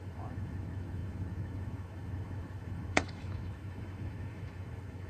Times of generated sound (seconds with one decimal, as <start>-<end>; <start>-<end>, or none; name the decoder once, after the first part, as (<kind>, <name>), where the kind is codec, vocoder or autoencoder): 0.0-5.1 (autoencoder, DAC-VAE)